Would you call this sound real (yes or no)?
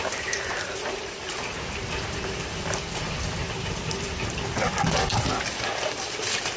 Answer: yes